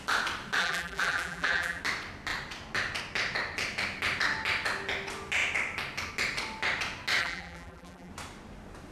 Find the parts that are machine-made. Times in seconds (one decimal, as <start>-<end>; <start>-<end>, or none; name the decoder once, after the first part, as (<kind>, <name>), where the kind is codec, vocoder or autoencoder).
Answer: 0.6-1.8 (vocoder, BigVGAN v2); 7.2-8.1